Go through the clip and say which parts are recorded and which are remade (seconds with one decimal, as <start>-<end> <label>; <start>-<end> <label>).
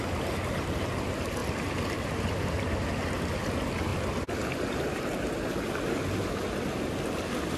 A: 0.0-7.6 recorded